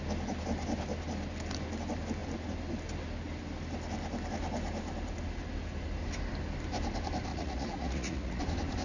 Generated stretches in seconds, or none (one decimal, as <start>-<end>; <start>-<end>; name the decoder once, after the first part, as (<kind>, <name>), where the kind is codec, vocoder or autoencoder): 7.3-8.4 (vocoder, Vocos)